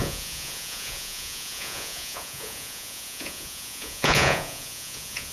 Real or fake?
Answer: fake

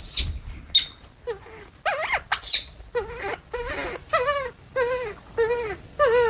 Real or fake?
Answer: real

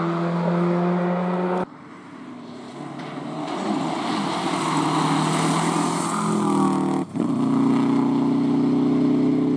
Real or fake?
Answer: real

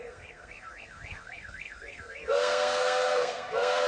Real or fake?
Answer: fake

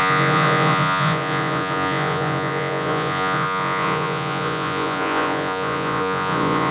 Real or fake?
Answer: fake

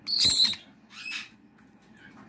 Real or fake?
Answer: real